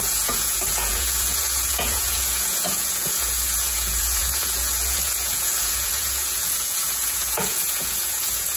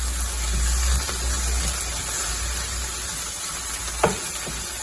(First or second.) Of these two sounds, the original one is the second